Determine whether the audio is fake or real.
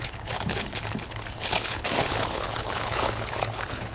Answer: fake